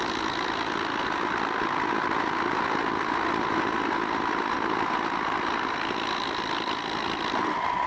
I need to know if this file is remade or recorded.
recorded